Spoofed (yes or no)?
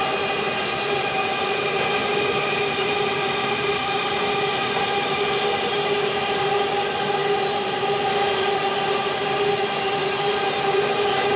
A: no